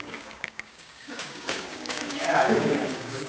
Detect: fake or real fake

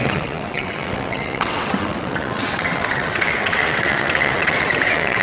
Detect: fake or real fake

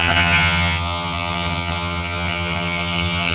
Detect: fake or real fake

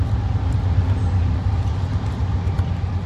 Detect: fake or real fake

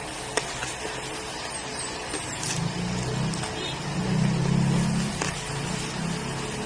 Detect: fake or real real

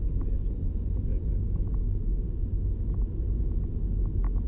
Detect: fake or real real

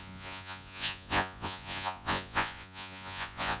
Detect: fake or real fake